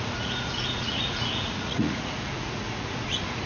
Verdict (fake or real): fake